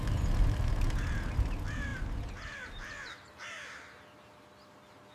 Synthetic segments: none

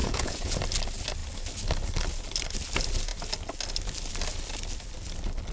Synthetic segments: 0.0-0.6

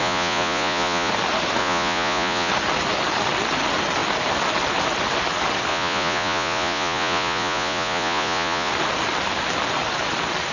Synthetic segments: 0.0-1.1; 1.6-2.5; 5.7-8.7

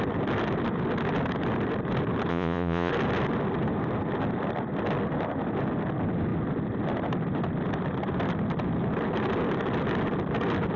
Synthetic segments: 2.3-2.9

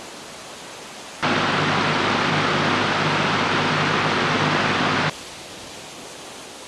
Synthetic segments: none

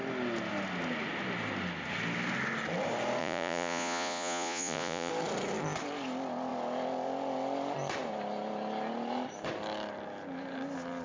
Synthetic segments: 3.2-5.1

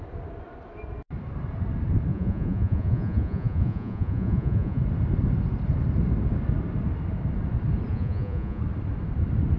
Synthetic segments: 2.1-4.8; 7.9-8.6

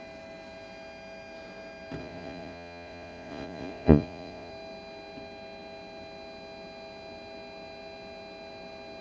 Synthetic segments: 2.0-4.5